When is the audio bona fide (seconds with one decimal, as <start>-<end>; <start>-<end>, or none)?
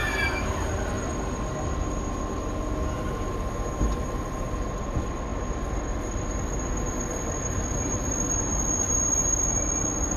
0.0-10.2